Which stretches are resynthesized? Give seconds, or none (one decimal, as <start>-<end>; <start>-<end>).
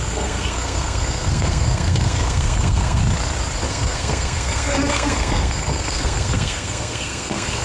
0.0-3.0; 3.7-7.6